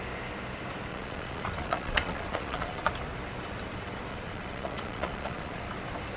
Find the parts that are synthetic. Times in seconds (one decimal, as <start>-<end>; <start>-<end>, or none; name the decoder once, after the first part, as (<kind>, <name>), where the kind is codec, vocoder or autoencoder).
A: 0.9-2.9 (vocoder, Vocos); 4.1-5.6